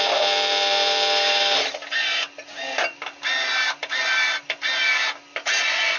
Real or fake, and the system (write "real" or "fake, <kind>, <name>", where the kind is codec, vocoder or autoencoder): fake, vocoder, BigVGAN v2